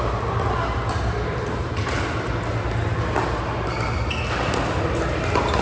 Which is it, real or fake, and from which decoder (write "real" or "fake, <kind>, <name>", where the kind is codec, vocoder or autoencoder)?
real